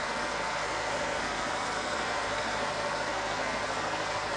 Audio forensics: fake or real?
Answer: fake